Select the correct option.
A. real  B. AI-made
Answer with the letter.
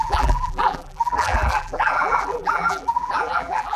B